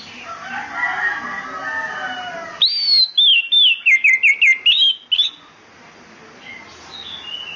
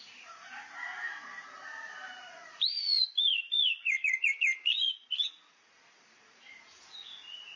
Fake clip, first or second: second